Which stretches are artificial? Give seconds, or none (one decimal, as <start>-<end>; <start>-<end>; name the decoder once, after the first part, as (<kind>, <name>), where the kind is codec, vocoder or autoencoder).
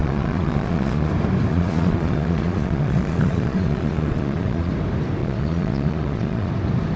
0.0-1.1 (vocoder, Vocos); 1.5-4.7; 5.2-6.5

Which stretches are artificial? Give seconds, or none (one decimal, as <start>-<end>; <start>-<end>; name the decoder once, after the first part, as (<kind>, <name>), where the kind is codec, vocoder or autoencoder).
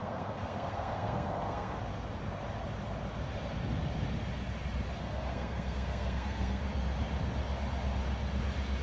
0.0-1.8 (codec, SNAC); 5.0-6.6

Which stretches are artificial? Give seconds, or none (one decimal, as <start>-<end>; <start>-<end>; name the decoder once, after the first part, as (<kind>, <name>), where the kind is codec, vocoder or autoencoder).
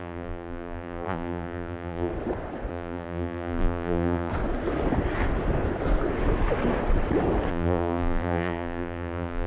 0.0-2.1 (vocoder, BigVGAN v2); 2.7-4.3; 7.5-9.5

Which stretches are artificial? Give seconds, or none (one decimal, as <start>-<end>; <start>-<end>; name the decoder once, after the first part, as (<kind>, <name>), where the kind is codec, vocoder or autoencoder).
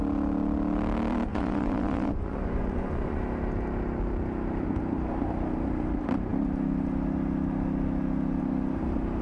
1.3-3.2 (vocoder, Vocos)